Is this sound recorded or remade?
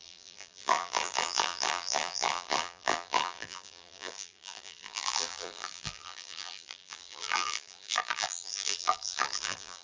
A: remade